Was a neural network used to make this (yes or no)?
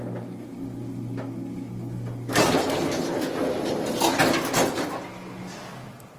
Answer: no